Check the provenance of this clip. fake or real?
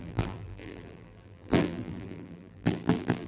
fake